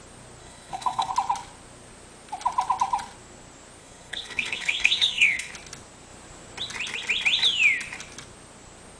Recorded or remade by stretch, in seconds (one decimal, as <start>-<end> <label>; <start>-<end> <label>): 0.0-0.4 recorded; 0.4-1.1 remade; 1.1-3.8 recorded; 3.8-5.5 remade; 5.5-9.0 recorded